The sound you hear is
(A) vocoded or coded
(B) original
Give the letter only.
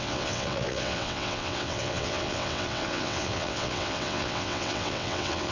A